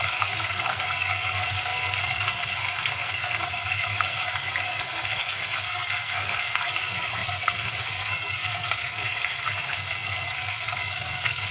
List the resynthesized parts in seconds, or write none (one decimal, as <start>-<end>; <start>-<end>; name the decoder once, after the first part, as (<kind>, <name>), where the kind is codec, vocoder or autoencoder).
0.0-11.5 (codec, SNAC)